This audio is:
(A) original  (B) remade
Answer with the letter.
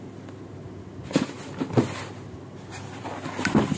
A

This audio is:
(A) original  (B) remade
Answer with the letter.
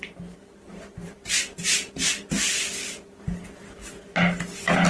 A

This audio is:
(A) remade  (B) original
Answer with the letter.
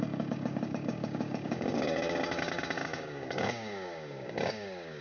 A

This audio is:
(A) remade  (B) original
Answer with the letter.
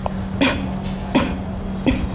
B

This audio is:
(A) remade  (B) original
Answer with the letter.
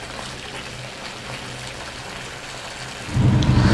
B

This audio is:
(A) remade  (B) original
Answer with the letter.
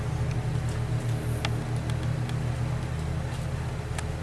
B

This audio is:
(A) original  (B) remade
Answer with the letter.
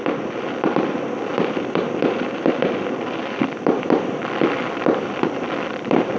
B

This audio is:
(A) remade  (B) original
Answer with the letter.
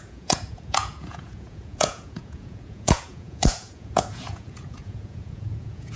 A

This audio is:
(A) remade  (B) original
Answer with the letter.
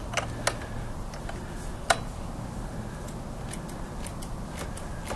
B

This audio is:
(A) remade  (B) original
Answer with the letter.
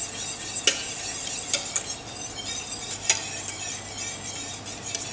B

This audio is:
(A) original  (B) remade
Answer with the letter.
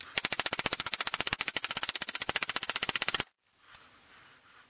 A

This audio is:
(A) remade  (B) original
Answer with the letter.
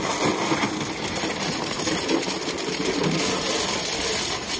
B